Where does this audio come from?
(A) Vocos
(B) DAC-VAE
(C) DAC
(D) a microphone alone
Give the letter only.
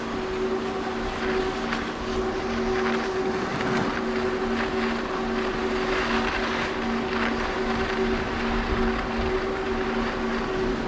D